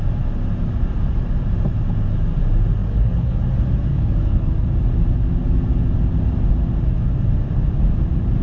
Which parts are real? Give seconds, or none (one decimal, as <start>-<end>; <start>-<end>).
0.0-2.8; 3.4-3.9; 4.5-8.4